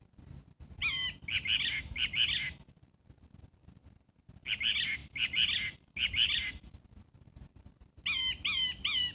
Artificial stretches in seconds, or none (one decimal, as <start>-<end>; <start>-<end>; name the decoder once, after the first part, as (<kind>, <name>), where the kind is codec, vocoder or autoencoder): none